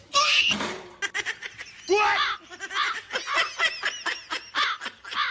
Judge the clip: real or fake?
real